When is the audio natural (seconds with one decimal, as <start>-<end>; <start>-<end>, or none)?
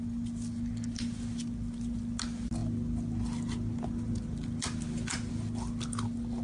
0.0-6.4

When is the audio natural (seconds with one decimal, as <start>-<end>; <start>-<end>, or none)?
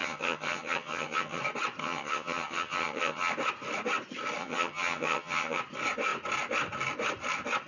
1.4-1.8; 3.3-4.4; 5.6-7.7